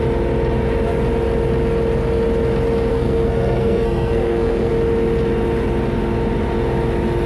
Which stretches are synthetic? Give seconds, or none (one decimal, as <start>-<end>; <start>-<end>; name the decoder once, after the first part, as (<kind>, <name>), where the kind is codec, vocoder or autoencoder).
2.9-4.7 (codec, SNAC)